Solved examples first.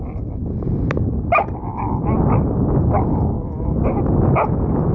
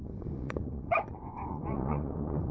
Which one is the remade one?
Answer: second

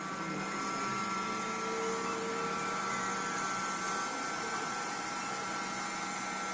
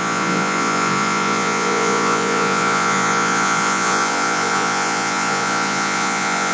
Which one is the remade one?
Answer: second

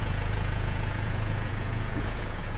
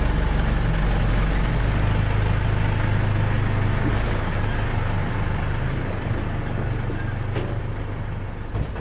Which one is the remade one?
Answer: first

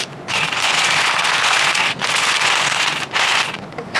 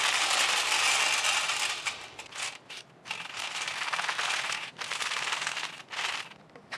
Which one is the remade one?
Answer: first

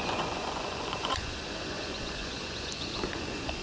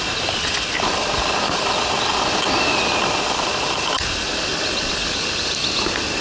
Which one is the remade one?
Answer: first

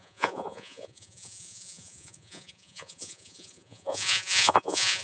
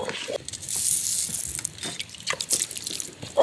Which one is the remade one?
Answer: first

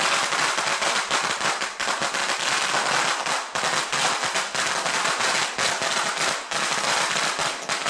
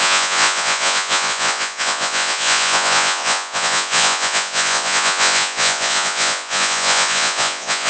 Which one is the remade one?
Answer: second